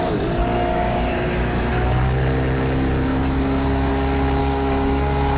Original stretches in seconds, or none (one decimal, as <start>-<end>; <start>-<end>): 0.0-0.4; 1.7-3.1; 3.9-4.4